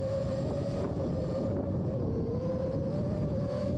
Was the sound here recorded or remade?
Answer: remade